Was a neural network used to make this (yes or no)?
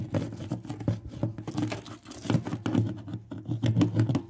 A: no